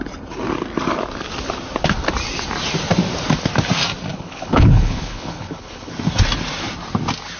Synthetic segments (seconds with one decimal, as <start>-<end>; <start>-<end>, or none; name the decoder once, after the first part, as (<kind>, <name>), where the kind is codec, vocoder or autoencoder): 4.1-5.9 (codec, HILCodec)

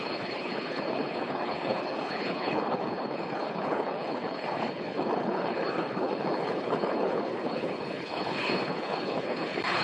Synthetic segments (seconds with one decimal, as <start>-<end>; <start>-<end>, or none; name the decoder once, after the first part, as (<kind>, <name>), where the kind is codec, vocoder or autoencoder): 0.0-9.8 (codec, HILCodec)